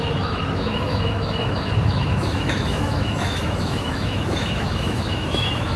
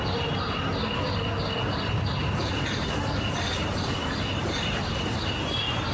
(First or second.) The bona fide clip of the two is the second